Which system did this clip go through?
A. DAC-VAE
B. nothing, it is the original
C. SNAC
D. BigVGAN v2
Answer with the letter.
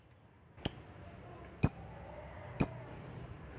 B